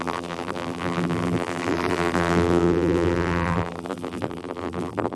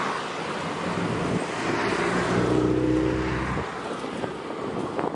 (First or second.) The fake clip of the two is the first